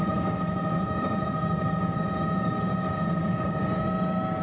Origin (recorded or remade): remade